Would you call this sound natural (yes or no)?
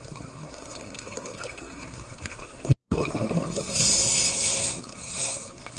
no